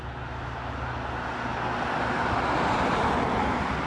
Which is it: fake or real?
real